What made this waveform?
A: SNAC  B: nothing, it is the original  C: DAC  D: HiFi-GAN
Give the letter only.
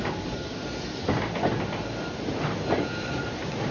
B